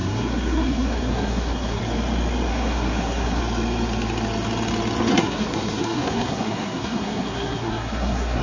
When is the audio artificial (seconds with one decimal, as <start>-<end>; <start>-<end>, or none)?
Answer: 0.0-1.8; 2.5-3.4; 5.1-8.4